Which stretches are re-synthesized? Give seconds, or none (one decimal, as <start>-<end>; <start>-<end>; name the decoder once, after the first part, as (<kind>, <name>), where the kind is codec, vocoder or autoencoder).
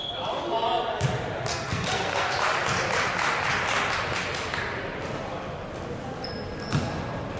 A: 1.5-2.3 (codec, SNAC)